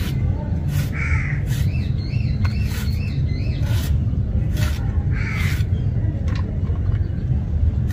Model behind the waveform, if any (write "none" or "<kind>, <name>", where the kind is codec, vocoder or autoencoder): none